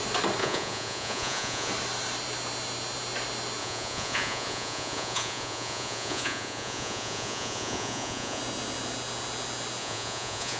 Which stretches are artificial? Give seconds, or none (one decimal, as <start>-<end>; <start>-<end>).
0.4-1.7; 3.6-8.4; 9.8-10.6